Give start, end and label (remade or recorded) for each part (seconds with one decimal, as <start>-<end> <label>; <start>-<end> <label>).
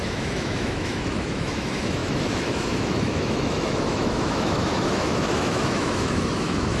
0.0-6.8 remade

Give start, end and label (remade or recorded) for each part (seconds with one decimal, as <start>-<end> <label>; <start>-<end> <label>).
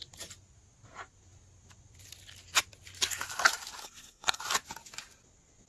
0.0-3.8 recorded; 3.8-4.4 remade; 4.4-5.7 recorded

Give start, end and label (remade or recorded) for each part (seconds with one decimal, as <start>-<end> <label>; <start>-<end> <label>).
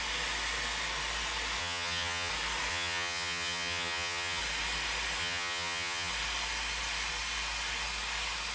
0.0-1.6 recorded; 1.6-2.3 remade; 2.3-2.7 recorded; 2.7-4.4 remade; 4.4-5.2 recorded; 5.2-6.1 remade; 6.1-8.5 recorded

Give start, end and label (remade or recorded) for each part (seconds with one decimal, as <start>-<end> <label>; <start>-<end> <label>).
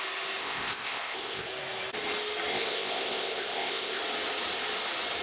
0.0-0.4 recorded; 0.4-1.5 remade; 1.5-2.5 recorded; 2.5-4.0 remade; 4.0-5.2 recorded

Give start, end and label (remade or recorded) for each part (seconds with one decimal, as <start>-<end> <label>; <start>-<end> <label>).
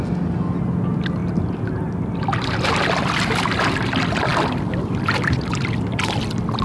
0.0-6.6 recorded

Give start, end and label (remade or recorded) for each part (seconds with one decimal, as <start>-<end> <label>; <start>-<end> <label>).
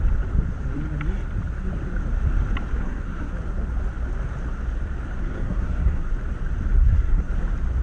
0.0-2.8 recorded; 2.8-3.3 remade; 3.3-5.2 recorded; 5.2-6.1 remade; 6.1-6.8 recorded; 6.8-7.3 remade; 7.3-7.8 recorded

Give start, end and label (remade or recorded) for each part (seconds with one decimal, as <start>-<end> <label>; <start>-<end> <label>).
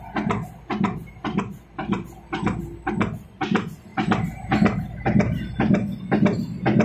0.0-6.8 recorded